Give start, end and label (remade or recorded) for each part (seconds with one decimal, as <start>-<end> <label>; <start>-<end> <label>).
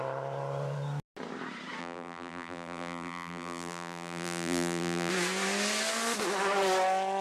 0.0-1.8 recorded; 1.8-5.1 remade; 5.1-7.2 recorded